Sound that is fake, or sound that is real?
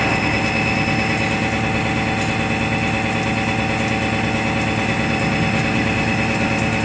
real